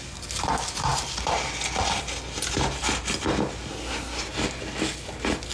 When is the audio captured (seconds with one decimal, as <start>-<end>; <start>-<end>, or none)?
0.0-3.7; 4.2-5.5